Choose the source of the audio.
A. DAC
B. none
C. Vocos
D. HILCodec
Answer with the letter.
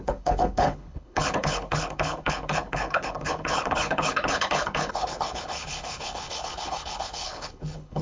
D